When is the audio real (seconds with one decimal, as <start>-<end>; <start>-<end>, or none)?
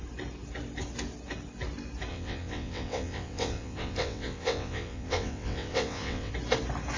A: 0.0-2.1; 6.3-7.0